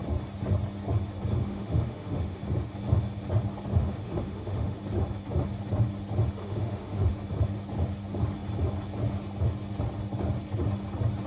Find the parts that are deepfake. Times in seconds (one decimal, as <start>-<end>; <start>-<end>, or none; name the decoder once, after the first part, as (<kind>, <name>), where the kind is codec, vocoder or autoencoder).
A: 1.4-2.4 (autoencoder, DAC-VAE); 3.7-4.8; 6.4-7.1